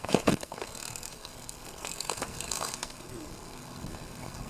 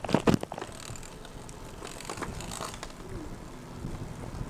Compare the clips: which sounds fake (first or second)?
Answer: first